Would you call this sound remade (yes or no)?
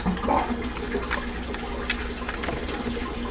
no